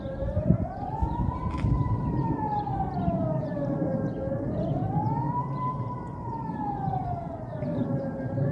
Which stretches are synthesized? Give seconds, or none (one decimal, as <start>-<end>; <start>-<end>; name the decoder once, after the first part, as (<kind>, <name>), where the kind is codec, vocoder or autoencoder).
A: 0.0-8.5 (vocoder, BigVGAN v2)